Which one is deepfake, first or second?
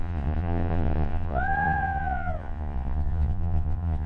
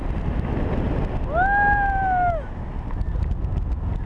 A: first